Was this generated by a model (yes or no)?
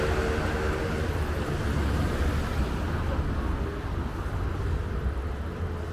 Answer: no